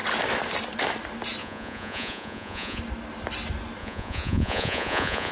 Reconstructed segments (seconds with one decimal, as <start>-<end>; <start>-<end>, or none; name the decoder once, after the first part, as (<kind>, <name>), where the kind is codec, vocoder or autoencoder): 1.4-2.8 (vocoder, Vocos); 3.8-5.3